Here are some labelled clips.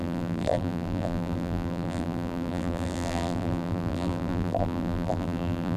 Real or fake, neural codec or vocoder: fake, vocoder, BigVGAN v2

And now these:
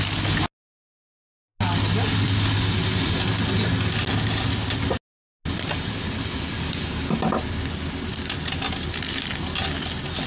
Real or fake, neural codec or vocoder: real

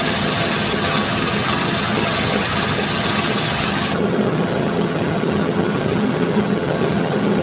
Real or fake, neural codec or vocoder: fake, vocoder, HiFi-GAN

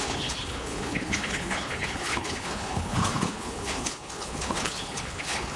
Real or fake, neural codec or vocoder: fake, codec, HILCodec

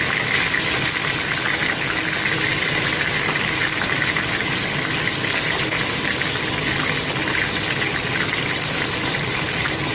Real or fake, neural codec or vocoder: real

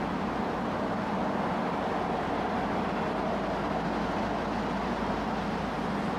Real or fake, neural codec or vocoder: real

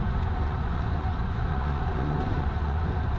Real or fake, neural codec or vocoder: fake, vocoder, Vocos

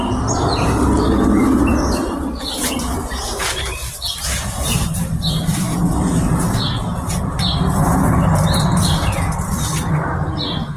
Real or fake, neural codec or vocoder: real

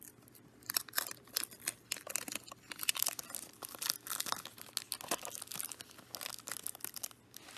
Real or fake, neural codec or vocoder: real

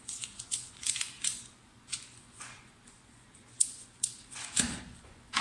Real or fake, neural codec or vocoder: fake, vocoder, Vocos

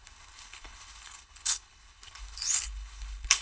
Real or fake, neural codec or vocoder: fake, codec, HILCodec